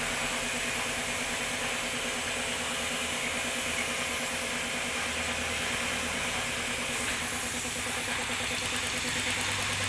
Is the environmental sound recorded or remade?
recorded